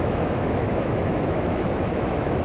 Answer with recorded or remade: remade